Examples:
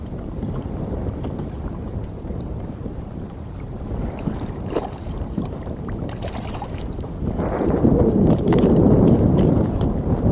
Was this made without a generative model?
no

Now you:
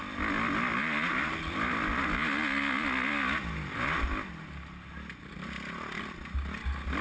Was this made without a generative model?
yes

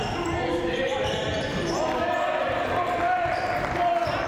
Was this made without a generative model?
no